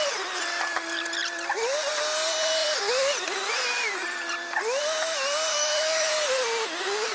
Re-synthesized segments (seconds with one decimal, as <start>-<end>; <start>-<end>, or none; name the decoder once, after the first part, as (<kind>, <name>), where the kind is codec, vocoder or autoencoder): 5.5-6.1 (autoencoder, DAC-VAE)